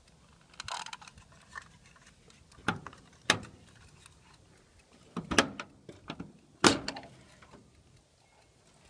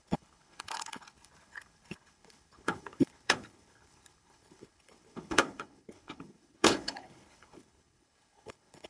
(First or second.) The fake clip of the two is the second